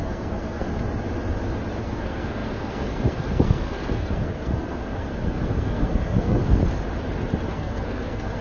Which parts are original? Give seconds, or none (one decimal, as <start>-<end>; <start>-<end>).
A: 0.7-1.8; 6.6-7.5